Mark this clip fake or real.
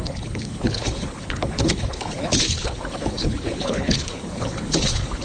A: fake